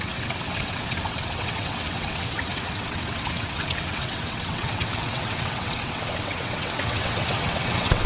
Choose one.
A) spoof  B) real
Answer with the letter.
A